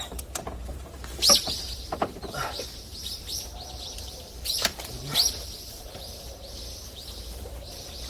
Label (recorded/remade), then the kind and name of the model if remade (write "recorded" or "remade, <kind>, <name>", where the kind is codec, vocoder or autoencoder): remade, vocoder, BigVGAN v2